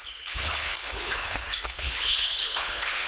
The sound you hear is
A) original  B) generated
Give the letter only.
B